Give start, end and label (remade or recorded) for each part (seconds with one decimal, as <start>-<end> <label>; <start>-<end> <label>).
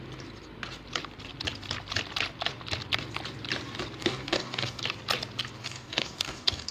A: 0.0-4.0 recorded; 4.0-4.8 remade; 4.8-5.6 recorded; 5.6-6.7 remade